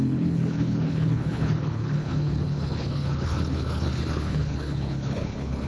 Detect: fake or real fake